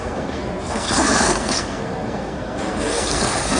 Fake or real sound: fake